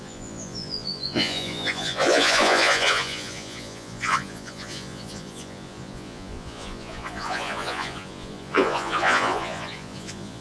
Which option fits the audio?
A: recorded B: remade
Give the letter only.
B